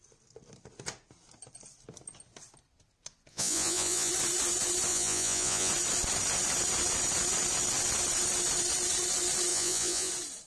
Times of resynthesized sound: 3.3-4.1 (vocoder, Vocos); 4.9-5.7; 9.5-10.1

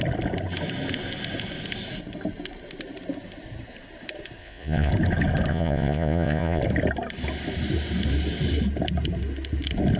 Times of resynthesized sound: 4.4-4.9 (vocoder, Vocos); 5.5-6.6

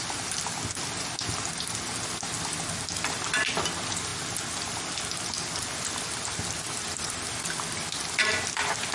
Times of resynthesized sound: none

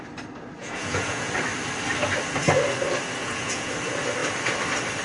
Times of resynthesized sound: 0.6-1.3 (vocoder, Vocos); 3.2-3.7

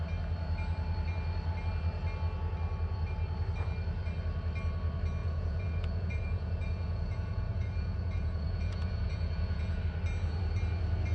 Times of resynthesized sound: 5.2-9.8 (vocoder, Vocos)

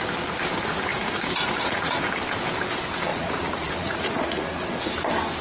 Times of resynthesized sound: 0.9-2.1 (vocoder, Vocos); 3.1-4.9

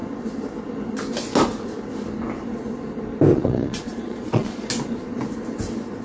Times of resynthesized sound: 3.3-4.7 (vocoder, Vocos)

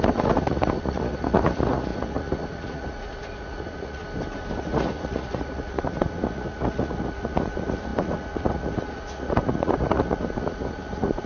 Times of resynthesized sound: 0.0-4.0 (vocoder, Vocos); 4.6-11.3